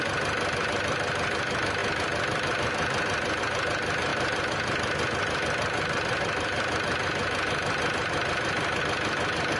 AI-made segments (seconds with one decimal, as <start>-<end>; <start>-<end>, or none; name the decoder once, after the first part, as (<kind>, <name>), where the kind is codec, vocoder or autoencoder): none